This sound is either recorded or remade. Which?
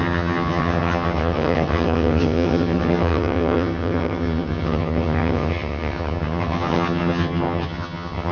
remade